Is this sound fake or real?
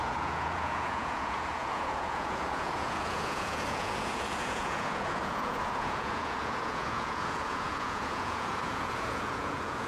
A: fake